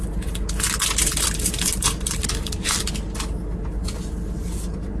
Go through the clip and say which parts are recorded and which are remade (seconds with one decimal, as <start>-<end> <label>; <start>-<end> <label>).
0.0-1.1 recorded; 1.1-2.7 remade; 2.7-5.0 recorded

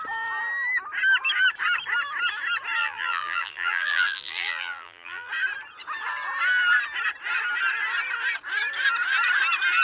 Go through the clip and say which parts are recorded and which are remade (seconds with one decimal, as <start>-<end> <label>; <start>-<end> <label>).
0.0-2.8 recorded; 2.8-5.3 remade; 5.3-9.8 recorded

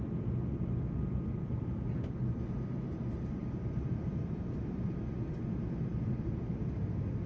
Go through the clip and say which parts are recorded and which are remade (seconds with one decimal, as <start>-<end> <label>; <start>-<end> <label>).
0.0-3.4 recorded; 3.4-4.8 remade; 4.8-7.3 recorded

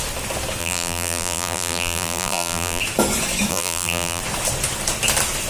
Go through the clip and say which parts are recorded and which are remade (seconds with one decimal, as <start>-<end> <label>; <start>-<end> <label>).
0.0-0.6 recorded; 0.6-2.8 remade; 2.8-3.5 recorded; 3.5-4.2 remade; 4.2-5.5 recorded

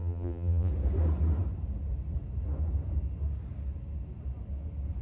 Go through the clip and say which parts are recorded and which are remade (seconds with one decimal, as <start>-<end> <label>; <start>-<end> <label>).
0.0-0.7 remade; 0.7-5.0 recorded